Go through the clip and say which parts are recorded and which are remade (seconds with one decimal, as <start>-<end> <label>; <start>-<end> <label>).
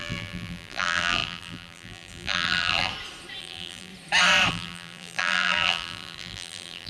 0.0-2.9 remade; 2.9-3.4 recorded; 3.4-3.9 remade; 3.9-4.5 recorded; 4.5-6.9 remade